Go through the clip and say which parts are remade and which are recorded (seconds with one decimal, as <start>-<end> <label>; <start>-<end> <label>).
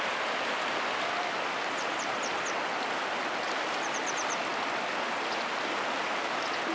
0.0-6.7 recorded